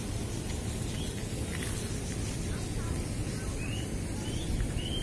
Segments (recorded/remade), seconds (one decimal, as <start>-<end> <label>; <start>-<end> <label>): 0.0-5.0 recorded